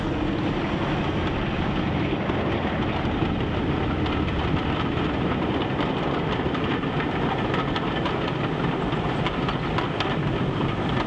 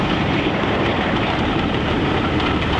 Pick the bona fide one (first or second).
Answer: first